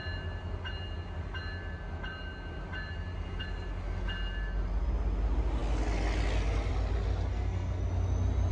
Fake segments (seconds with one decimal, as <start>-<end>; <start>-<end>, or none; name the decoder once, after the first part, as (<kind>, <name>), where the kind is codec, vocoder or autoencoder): 7.3-7.8 (codec, SNAC)